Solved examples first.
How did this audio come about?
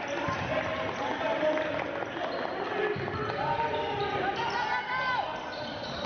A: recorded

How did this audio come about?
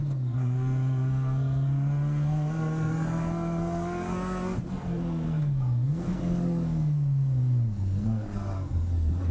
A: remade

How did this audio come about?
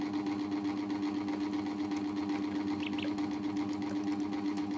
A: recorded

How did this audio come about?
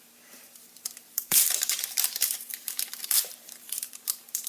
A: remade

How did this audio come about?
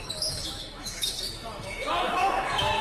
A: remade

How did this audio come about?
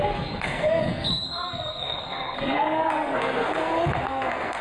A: remade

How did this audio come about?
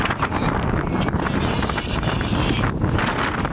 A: recorded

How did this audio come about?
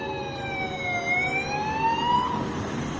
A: recorded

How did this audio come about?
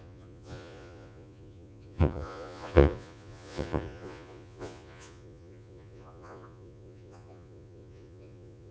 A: remade